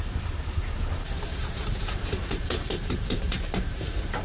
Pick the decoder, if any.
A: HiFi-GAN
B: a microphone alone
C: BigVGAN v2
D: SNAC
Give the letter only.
C